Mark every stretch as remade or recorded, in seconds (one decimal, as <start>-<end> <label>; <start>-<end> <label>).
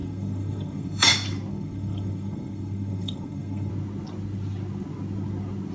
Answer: 0.0-1.1 remade; 1.1-1.5 recorded; 1.5-3.7 remade; 3.7-5.7 recorded